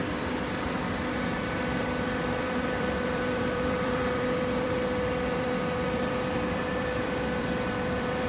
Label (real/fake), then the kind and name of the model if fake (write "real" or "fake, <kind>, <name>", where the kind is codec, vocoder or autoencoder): fake, vocoder, BigVGAN v2